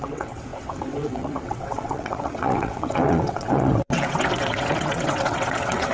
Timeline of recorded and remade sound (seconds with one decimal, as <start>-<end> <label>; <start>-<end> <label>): 0.0-5.9 remade